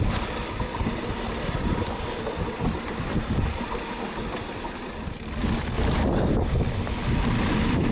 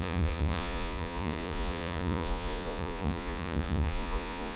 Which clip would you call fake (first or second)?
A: second